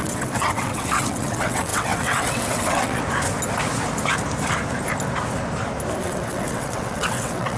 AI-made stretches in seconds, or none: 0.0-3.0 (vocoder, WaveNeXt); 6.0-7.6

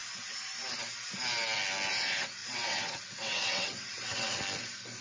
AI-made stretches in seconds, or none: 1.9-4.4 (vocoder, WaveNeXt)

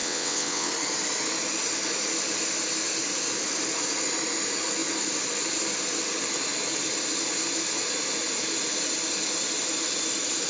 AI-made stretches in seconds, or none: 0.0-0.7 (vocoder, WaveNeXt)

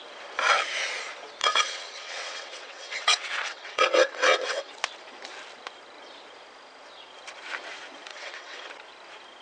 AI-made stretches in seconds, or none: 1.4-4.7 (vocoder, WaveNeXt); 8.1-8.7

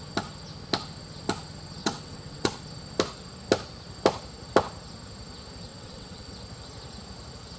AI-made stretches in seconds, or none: 1.8-2.6 (vocoder, WaveNeXt); 5.7-6.4

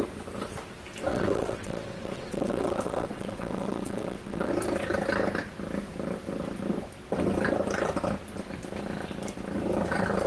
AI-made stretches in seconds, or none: 1.1-4.5 (vocoder, WaveNeXt)

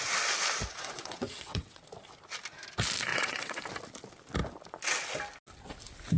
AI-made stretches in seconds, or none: 0.7-1.8 (vocoder, WaveNeXt); 3.1-3.6

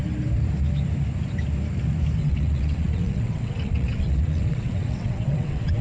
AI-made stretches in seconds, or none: 2.2-5.8 (vocoder, WaveNeXt)